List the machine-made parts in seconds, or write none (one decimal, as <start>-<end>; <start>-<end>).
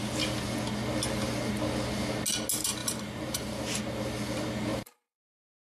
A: 2.8-3.8; 4.7-5.8